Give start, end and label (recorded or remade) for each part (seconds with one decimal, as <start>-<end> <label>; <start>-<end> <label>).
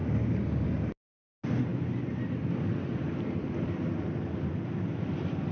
0.0-0.9 remade; 0.9-1.7 recorded; 1.7-5.0 remade; 5.0-5.5 recorded